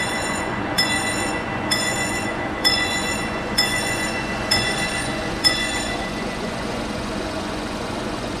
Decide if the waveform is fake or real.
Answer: fake